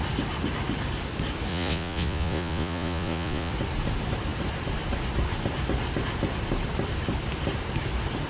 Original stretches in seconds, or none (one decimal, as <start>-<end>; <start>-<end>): 0.0-1.5; 3.5-8.3